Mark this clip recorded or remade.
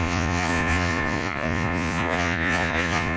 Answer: remade